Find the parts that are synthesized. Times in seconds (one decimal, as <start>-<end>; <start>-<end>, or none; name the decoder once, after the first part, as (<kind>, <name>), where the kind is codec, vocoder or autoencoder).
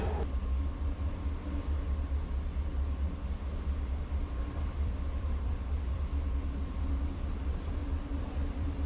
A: 0.0-0.4 (vocoder, BigVGAN v2); 4.2-8.9